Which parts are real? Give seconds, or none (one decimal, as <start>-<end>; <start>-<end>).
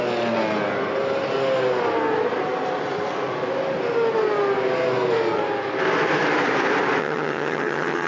0.0-7.0